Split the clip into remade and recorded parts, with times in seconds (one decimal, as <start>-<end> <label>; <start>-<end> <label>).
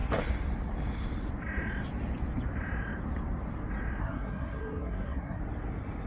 0.0-4.0 recorded; 4.0-5.4 remade; 5.4-6.1 recorded